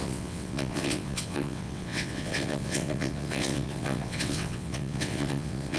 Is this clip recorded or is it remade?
remade